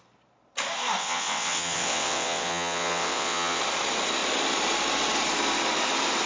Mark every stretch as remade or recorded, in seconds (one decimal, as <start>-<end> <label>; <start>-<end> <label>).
0.0-1.0 recorded; 1.0-3.6 remade; 3.6-6.3 recorded